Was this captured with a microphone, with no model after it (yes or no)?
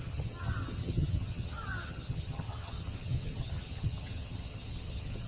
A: no